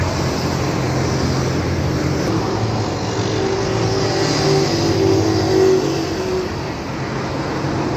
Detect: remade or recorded recorded